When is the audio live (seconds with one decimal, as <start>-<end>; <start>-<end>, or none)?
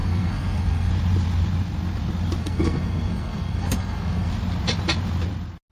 0.9-2.4; 4.3-5.7